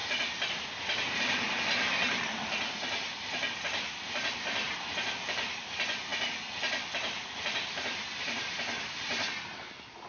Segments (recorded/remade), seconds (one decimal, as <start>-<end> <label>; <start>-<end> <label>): 0.0-10.1 recorded